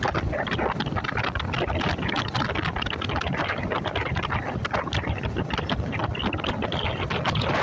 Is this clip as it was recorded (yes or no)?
yes